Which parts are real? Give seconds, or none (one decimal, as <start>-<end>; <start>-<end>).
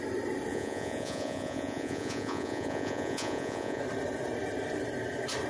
0.0-0.5; 3.8-5.5